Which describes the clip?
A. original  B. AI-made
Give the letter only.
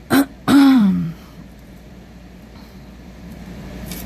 B